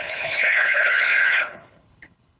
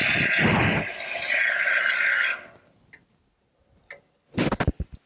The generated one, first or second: first